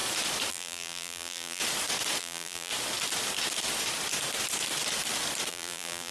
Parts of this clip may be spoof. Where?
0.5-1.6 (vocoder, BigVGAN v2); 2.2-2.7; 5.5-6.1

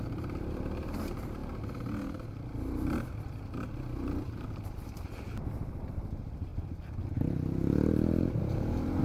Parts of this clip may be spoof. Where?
0.0-1.4 (vocoder, BigVGAN v2); 4.2-6.5; 8.4-9.0

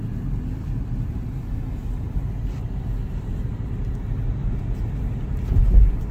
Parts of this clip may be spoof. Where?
none

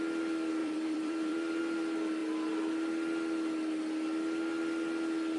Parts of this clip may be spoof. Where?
0.6-1.6 (vocoder, BigVGAN v2)

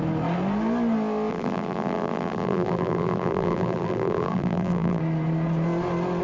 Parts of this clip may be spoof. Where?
1.3-5.0 (vocoder, BigVGAN v2)